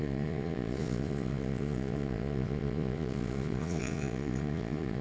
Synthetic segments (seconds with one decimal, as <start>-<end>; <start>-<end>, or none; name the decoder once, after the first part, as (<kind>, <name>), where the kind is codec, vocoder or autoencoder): 0.0-5.0 (vocoder, Vocos)